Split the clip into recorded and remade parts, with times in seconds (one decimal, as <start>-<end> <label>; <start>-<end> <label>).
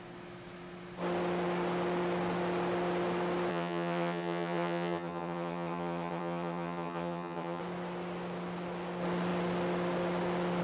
0.0-3.5 recorded; 3.5-7.6 remade; 7.6-10.6 recorded